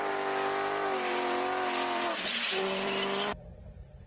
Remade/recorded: remade